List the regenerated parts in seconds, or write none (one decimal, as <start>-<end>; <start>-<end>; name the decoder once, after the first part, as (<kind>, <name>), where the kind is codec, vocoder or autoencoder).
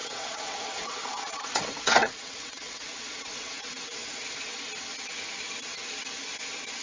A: 0.0-4.0 (vocoder, WaveNeXt)